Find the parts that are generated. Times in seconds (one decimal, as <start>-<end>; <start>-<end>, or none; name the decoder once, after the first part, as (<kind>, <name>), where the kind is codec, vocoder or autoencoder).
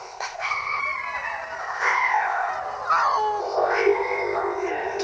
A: 0.0-0.8 (codec, ZipCodec); 1.6-2.5; 3.4-5.0